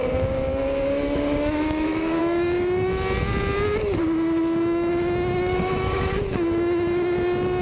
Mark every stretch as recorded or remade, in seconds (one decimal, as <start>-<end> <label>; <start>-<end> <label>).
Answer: 0.0-2.9 remade; 2.9-4.0 recorded; 4.0-7.6 remade